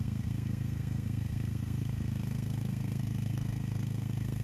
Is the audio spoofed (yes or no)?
yes